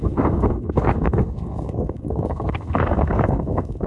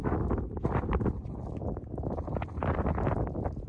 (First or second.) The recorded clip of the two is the second